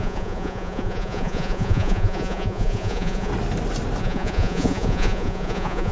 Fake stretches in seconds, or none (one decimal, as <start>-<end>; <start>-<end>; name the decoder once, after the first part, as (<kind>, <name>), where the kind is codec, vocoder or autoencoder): 0.0-3.3 (vocoder, Vocos); 4.0-5.9